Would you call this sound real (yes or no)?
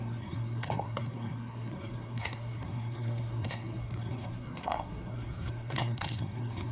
no